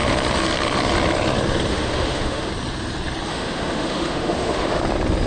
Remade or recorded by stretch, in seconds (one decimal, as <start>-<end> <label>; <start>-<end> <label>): 0.0-1.7 recorded; 1.7-2.5 remade; 2.5-3.3 recorded; 3.3-4.8 remade; 4.8-5.3 recorded